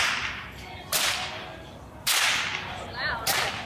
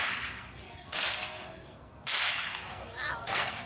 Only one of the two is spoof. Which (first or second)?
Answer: second